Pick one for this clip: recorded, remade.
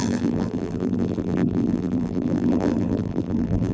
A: remade